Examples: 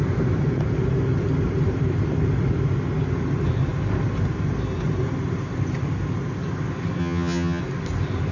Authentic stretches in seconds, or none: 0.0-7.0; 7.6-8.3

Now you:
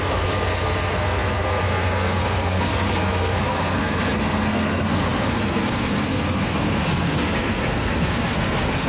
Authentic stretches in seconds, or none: none

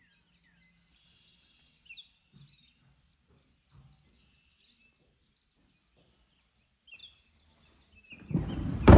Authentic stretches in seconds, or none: 0.0-9.0

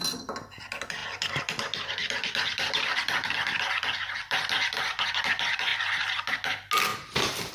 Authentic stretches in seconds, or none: 0.0-1.0; 5.1-5.7; 6.3-7.5

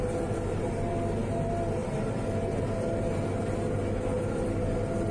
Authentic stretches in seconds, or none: 0.0-5.1

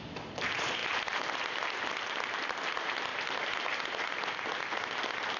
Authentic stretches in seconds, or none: 0.0-5.4

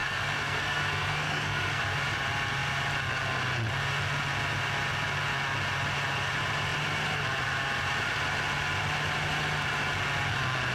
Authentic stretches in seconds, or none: 1.8-10.7

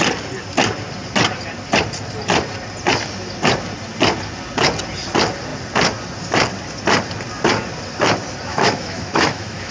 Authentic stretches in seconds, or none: 0.0-8.5